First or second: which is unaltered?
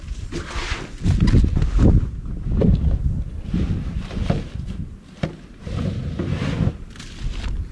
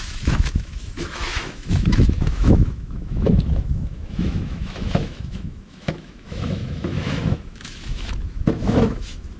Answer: first